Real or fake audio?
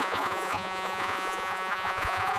fake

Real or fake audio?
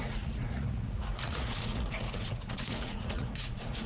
fake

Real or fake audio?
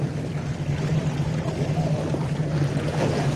real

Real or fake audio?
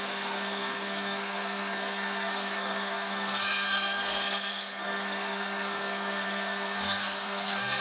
fake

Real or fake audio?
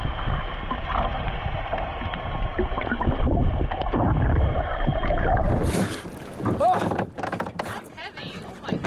fake